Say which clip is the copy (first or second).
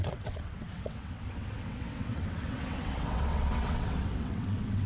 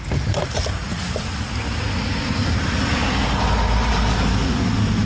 first